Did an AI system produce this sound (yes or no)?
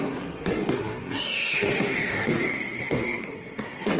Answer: yes